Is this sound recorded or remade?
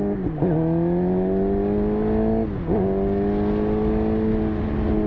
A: recorded